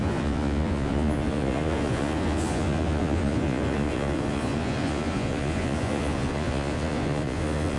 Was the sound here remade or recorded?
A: remade